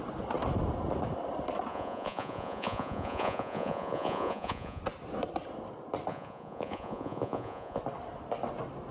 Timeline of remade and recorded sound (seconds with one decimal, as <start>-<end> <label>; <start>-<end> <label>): 0.0-1.7 recorded; 1.7-4.8 remade; 4.8-6.1 recorded; 6.1-7.8 remade; 7.8-8.9 recorded